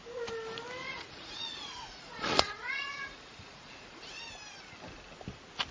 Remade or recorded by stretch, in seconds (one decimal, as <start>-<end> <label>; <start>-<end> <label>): 0.0-0.8 recorded; 0.8-4.2 remade; 4.2-5.7 recorded